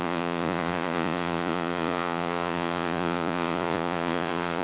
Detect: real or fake fake